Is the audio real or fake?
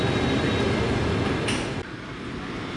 real